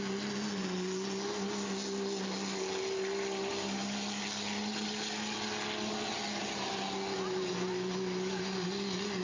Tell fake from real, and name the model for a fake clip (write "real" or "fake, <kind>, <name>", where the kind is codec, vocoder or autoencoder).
real